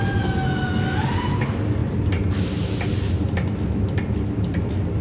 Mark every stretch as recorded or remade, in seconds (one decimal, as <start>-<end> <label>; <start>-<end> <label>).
0.0-5.0 recorded